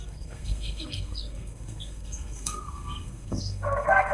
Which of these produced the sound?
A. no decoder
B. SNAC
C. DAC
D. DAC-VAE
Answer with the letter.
B